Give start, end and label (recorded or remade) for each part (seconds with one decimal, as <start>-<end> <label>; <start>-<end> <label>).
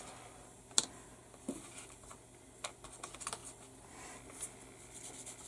0.0-1.2 recorded; 1.2-1.7 remade; 1.7-3.4 recorded; 3.4-5.1 remade; 5.1-5.5 recorded